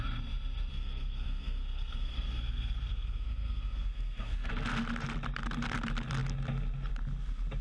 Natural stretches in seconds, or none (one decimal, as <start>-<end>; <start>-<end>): 0.0-0.7; 4.5-7.6